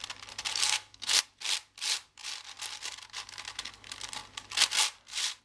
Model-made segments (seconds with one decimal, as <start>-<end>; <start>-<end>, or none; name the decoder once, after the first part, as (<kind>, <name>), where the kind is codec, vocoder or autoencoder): 0.6-1.2 (codec, SNAC)